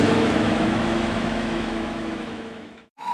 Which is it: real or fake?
fake